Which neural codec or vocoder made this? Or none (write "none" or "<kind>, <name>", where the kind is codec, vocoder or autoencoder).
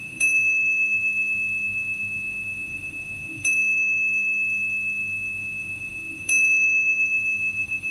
autoencoder, DAC-VAE